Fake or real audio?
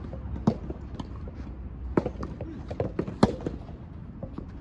real